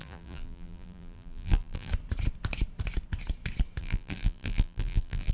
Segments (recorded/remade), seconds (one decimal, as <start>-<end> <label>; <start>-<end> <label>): 0.0-1.9 remade; 1.9-3.8 recorded; 3.8-5.3 remade